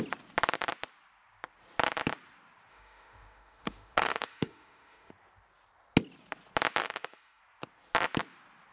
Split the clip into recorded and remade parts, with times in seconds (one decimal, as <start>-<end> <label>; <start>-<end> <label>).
0.0-2.7 recorded; 2.7-5.1 remade; 5.1-6.8 recorded; 6.8-7.4 remade; 7.4-8.7 recorded